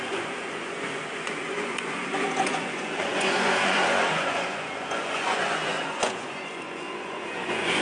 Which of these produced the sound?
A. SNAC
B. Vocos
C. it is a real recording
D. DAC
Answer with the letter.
B